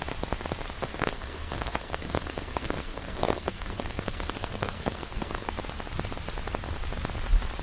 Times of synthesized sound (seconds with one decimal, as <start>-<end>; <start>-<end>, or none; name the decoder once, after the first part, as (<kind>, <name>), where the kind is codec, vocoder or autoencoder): 0.9-5.5 (codec, SNAC)